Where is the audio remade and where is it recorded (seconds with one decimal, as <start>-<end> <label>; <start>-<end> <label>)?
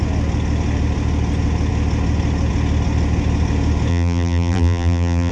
0.0-3.9 recorded; 3.9-5.3 remade